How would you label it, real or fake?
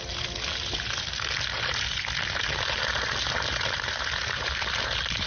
real